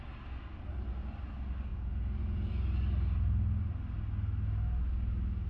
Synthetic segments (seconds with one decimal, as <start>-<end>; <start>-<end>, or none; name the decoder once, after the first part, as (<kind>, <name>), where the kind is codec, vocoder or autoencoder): 1.7-2.5 (vocoder, Vocos)